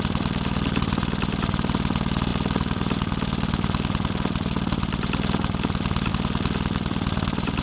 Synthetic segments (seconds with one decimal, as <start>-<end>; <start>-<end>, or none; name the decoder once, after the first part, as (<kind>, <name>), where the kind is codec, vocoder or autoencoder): none